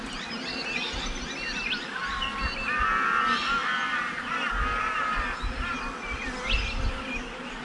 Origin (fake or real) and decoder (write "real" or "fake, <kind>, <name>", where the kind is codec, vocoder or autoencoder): real